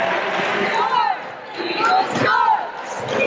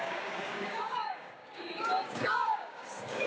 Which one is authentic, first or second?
first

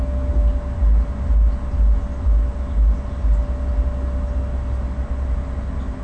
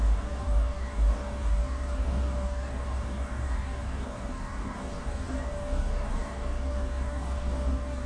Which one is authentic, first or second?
first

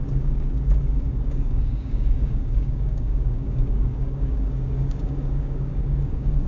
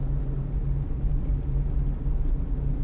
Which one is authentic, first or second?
second